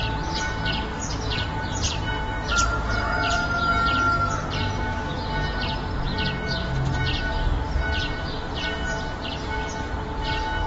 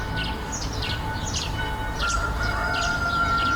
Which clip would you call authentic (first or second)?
first